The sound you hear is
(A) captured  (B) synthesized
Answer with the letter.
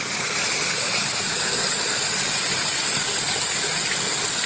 A